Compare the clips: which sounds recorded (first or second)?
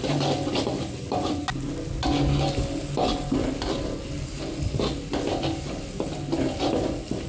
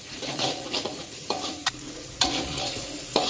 first